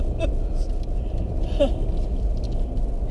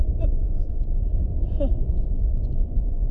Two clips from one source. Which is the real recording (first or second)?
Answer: first